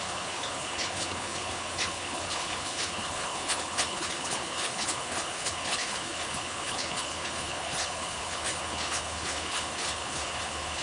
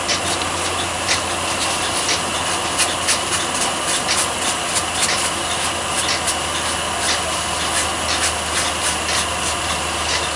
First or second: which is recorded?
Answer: second